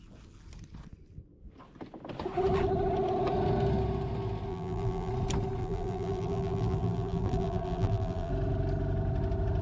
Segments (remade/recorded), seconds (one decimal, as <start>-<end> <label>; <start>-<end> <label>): 0.0-4.5 recorded; 4.5-5.1 remade; 5.1-5.6 recorded; 5.6-8.3 remade; 8.3-9.6 recorded